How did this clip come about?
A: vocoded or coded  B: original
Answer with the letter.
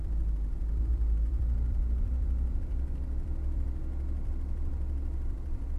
A